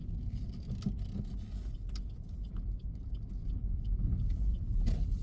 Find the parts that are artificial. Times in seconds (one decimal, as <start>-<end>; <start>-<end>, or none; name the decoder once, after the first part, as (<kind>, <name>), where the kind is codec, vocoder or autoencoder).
none